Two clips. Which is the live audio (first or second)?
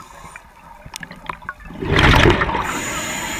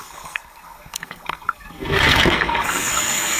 first